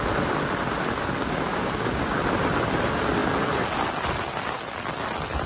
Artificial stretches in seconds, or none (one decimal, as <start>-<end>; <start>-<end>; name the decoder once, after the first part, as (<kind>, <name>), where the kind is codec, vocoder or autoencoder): 1.5-2.2 (codec, DAC)